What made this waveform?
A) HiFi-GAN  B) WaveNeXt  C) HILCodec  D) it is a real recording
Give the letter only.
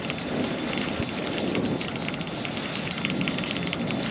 D